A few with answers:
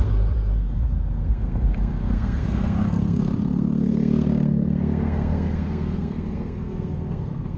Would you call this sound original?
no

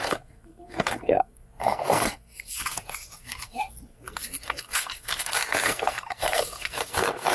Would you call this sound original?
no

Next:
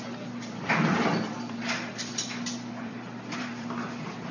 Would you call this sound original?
no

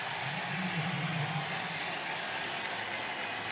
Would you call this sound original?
yes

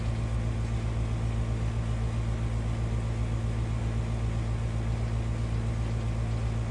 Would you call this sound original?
yes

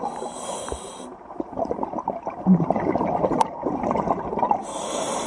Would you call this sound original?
no